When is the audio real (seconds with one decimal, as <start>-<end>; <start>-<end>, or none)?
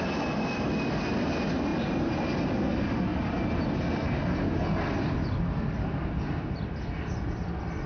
0.0-7.9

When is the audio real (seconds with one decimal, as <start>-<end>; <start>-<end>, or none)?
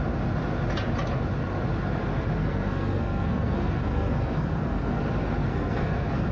0.0-2.4; 5.0-5.4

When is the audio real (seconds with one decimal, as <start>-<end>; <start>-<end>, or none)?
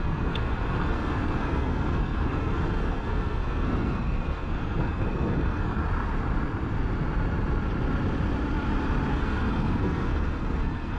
5.8-9.1